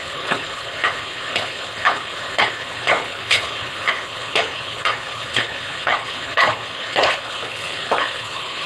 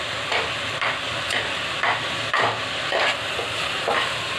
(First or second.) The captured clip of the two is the second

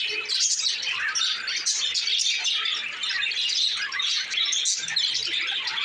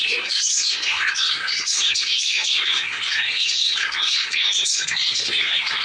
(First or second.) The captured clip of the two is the first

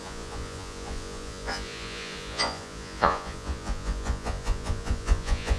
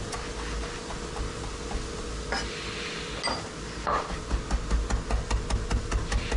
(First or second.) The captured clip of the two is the second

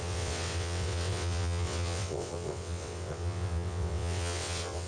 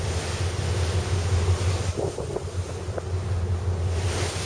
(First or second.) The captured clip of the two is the second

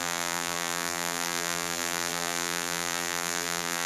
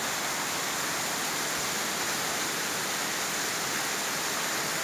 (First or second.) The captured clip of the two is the second